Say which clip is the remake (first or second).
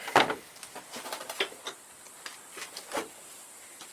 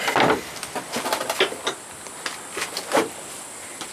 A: first